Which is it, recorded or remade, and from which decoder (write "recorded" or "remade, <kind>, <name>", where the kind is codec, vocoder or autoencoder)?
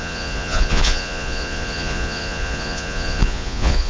remade, vocoder, Vocos